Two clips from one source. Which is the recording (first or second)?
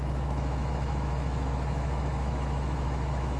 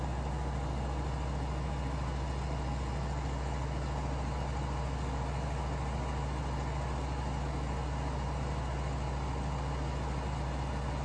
second